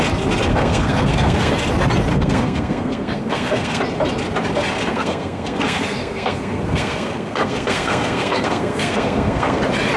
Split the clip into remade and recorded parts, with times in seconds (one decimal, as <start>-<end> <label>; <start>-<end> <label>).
0.0-0.5 recorded; 0.5-1.5 remade; 1.5-2.1 recorded; 2.1-3.8 remade; 3.8-4.9 recorded; 4.9-9.6 remade; 9.6-10.0 recorded